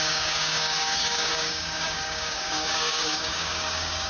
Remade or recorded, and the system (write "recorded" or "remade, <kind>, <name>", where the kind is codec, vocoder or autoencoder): remade, codec, DAC